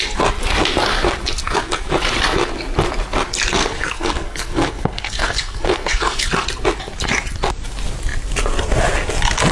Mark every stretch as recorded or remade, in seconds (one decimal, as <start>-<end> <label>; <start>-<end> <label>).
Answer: 0.0-1.4 recorded; 1.4-1.9 remade; 1.9-3.6 recorded; 3.6-6.3 remade; 6.3-9.5 recorded